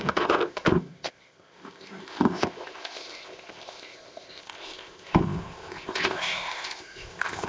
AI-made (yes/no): yes